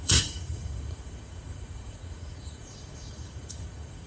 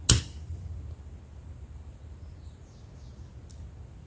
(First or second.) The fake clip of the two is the first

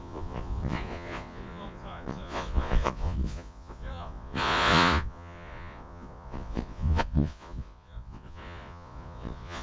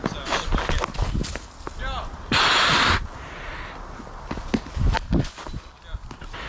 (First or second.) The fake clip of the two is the first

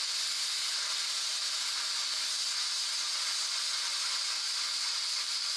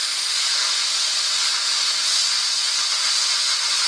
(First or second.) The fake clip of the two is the second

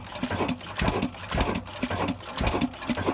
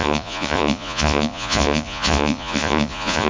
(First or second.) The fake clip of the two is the second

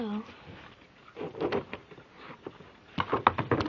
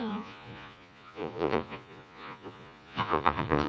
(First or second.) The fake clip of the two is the second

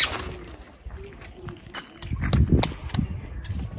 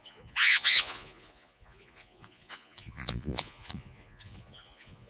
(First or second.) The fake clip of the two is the second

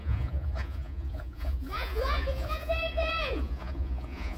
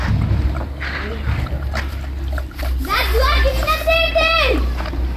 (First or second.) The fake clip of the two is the first